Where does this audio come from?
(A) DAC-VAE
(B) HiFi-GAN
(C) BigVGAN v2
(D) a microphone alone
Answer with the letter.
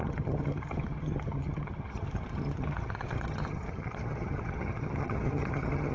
B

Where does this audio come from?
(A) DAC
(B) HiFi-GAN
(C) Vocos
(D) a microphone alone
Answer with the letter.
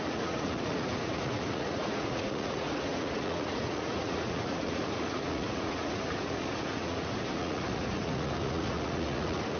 C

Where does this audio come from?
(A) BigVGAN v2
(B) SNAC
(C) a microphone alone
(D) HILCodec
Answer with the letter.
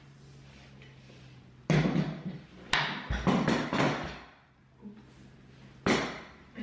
C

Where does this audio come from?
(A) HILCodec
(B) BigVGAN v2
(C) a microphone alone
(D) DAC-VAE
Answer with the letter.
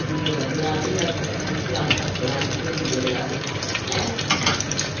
C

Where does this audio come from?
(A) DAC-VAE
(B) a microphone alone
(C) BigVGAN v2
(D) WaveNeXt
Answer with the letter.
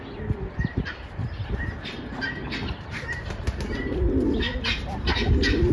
B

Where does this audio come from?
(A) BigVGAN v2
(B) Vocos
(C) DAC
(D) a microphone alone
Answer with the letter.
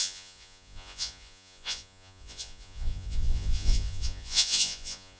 B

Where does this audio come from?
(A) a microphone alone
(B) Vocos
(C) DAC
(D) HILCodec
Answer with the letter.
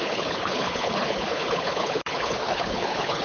D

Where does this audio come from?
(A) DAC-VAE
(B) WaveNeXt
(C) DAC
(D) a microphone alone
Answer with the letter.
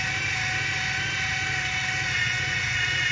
D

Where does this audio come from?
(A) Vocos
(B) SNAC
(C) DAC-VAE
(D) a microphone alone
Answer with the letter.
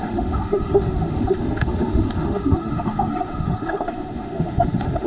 C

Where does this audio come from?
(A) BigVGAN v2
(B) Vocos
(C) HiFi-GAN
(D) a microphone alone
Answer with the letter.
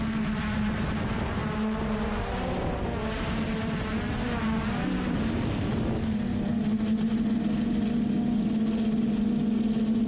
D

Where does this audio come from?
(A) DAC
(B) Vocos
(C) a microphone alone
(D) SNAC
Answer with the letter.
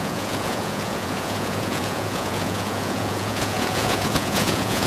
B